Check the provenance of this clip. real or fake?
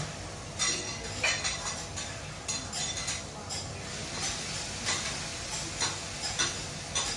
real